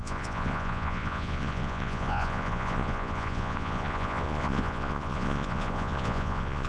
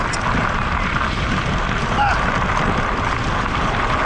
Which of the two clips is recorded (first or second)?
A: second